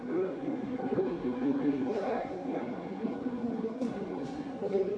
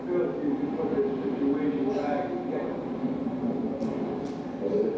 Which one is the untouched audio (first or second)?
second